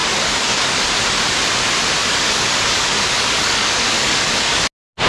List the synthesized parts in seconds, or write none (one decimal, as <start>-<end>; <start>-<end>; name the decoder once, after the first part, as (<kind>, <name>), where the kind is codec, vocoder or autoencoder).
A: 0.0-0.8 (codec, DAC); 2.0-4.6